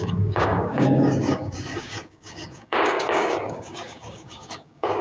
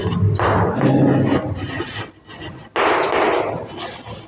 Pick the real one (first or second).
second